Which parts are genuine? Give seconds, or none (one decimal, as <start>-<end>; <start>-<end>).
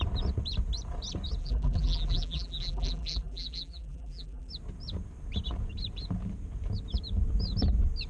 0.0-1.4; 4.5-8.1